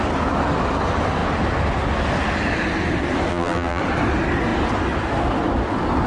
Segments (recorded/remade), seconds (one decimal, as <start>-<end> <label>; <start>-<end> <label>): 0.0-3.3 recorded; 3.3-3.8 remade; 3.8-6.1 recorded